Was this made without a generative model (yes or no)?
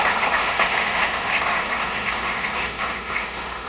no